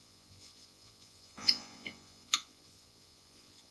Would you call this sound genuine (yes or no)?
no